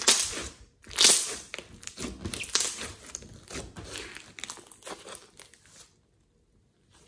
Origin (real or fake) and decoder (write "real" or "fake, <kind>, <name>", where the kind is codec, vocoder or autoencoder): real